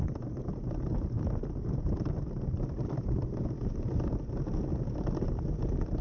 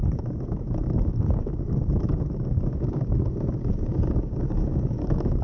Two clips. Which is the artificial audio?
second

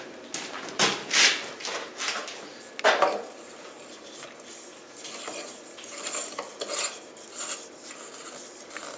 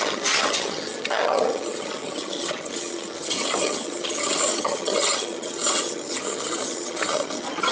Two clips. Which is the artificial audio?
second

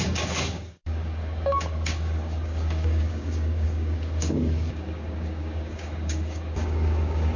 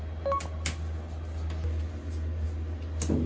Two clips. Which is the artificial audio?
first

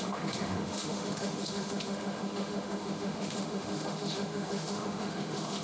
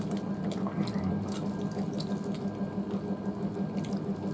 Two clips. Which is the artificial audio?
first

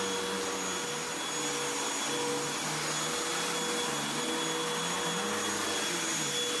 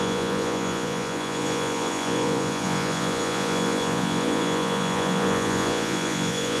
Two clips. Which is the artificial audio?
second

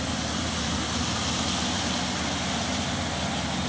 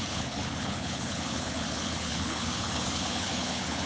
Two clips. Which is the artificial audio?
second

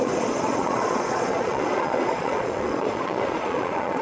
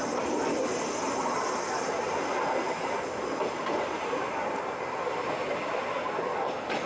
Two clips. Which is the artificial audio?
first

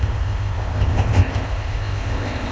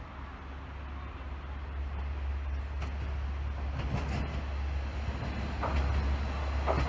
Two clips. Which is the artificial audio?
first